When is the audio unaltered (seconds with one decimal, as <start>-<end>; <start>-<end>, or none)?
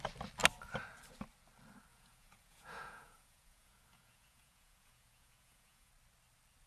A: 0.0-1.9; 5.9-6.7